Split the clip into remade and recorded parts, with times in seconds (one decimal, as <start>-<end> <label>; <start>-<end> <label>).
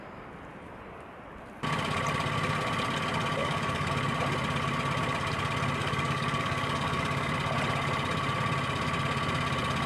0.0-3.4 recorded; 3.4-3.9 remade; 3.9-5.8 recorded; 5.8-7.3 remade; 7.3-9.9 recorded